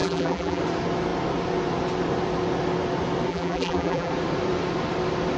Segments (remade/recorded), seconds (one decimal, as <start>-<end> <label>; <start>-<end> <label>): 0.0-0.6 remade; 0.6-3.3 recorded; 3.3-4.1 remade; 4.1-5.4 recorded

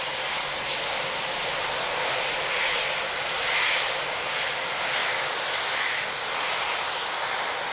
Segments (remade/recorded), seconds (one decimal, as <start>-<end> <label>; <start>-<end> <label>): 0.0-5.0 recorded; 5.0-6.0 remade; 6.0-7.7 recorded

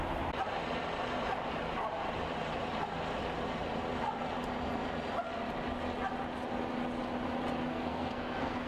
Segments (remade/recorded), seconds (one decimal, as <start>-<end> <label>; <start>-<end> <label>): 0.0-7.7 recorded; 7.7-8.7 remade

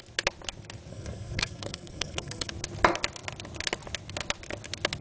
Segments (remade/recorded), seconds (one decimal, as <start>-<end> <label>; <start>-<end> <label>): 0.0-0.9 recorded; 0.9-2.5 remade; 2.5-5.0 recorded

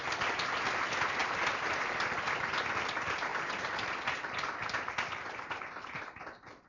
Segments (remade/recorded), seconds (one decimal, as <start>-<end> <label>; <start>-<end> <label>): 0.0-6.7 recorded

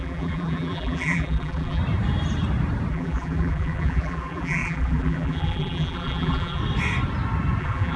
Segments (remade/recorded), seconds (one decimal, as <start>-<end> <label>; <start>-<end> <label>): 0.0-1.8 remade; 1.8-2.9 recorded; 2.9-6.6 remade; 6.6-7.6 recorded; 7.6-8.0 remade

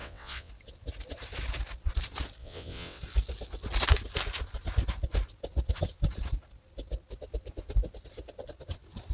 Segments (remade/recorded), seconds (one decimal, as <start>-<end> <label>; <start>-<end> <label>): 0.0-0.5 remade; 0.5-2.4 recorded; 2.4-3.0 remade; 3.0-9.1 recorded

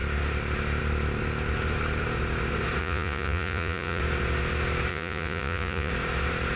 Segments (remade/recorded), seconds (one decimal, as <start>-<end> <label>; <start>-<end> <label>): 0.0-2.8 recorded; 2.8-4.0 remade; 4.0-4.9 recorded; 4.9-5.9 remade; 5.9-6.6 recorded